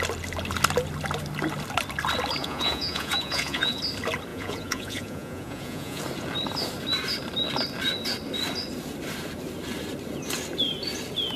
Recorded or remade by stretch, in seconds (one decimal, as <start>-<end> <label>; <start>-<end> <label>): 0.0-2.4 recorded; 2.4-3.8 remade; 3.8-4.3 recorded; 4.3-6.0 remade; 6.0-11.4 recorded